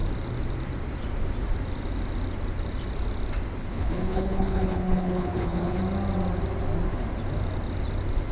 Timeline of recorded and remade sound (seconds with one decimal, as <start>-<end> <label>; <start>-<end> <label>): 0.0-3.6 recorded; 3.6-5.8 remade; 5.8-8.3 recorded